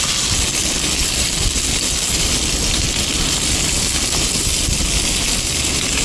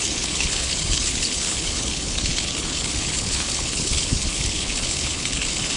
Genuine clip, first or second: first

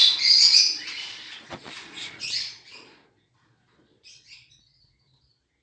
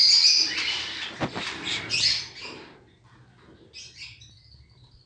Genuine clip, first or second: second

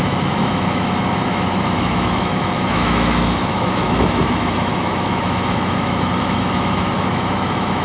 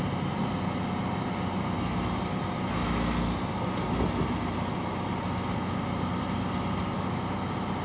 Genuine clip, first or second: second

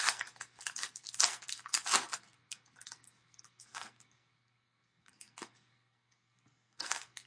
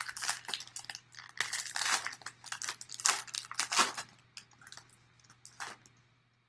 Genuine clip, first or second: second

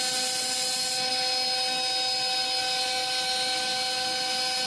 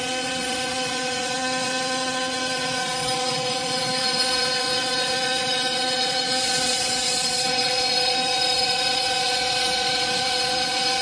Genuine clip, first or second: first